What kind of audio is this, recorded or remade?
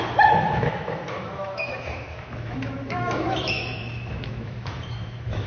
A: remade